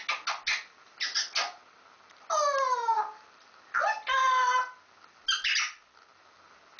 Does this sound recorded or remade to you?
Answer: recorded